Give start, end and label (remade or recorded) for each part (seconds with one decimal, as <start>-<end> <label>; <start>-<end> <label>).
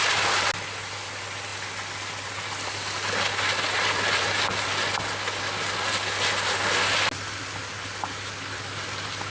0.0-9.3 recorded